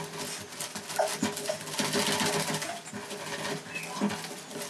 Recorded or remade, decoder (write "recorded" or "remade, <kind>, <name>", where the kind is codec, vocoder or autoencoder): recorded